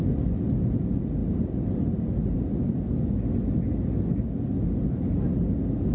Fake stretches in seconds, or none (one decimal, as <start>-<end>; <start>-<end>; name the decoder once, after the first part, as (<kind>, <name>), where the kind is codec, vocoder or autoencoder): none